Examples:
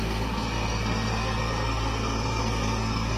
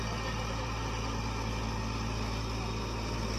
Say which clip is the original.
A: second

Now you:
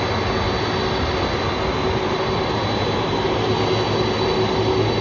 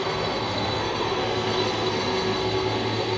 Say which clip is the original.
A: first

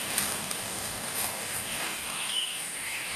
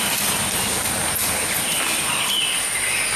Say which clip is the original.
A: second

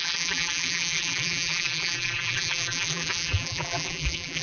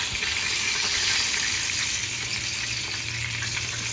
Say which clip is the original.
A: second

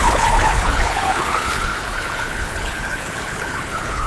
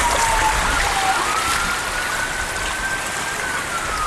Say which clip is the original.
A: second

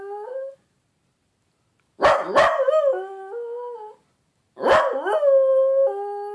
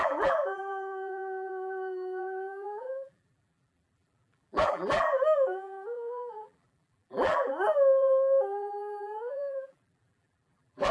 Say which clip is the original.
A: first